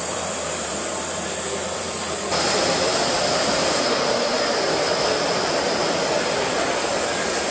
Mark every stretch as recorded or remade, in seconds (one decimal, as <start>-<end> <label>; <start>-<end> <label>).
0.0-7.5 recorded